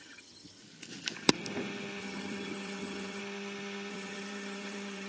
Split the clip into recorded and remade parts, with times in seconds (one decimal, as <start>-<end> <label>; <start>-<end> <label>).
0.0-0.6 remade; 0.6-2.0 recorded; 2.0-3.2 remade; 3.2-3.9 recorded; 3.9-5.1 remade